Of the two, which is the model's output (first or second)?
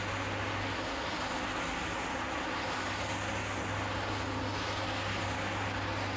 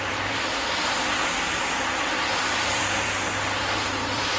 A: second